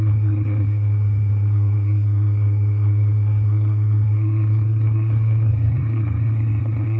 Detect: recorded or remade remade